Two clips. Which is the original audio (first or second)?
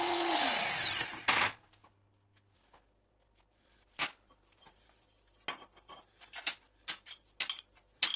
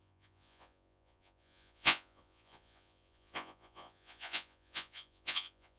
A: first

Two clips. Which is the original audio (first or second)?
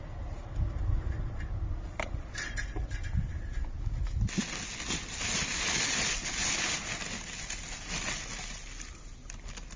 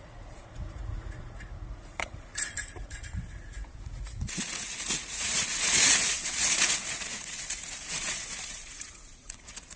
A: first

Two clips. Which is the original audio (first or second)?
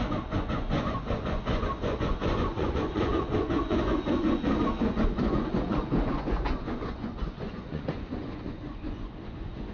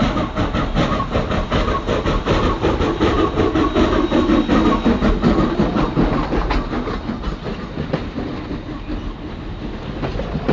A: second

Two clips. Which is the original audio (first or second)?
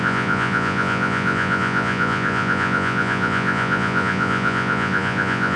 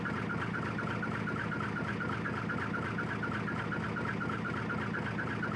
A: second